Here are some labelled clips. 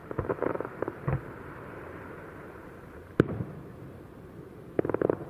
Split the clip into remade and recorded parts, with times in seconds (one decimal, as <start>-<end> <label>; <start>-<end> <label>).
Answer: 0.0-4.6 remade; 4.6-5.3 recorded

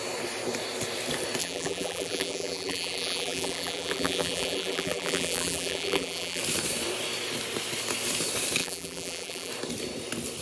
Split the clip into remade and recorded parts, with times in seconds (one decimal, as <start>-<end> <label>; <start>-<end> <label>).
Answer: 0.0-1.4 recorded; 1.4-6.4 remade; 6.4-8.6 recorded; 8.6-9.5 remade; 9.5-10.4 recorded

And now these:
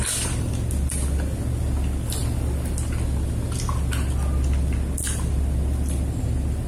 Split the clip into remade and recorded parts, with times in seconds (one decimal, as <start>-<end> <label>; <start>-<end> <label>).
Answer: 0.0-6.7 recorded